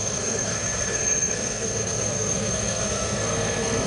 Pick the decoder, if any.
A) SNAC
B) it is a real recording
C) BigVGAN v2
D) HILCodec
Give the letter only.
A